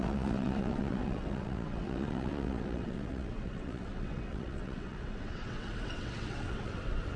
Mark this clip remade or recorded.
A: remade